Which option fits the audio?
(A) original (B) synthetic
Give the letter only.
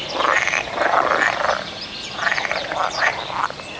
B